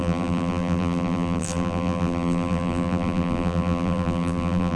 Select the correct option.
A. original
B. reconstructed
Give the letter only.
B